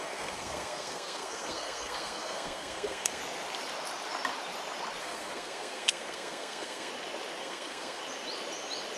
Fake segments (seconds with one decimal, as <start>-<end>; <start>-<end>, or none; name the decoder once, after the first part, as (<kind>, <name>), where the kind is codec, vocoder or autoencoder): 0.0-3.2 (codec, SNAC); 5.0-6.9; 7.4-8.0